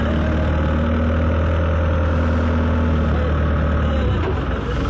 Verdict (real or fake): real